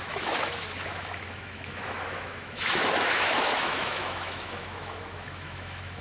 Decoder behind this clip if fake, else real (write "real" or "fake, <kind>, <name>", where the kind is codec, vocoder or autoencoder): fake, autoencoder, DAC-VAE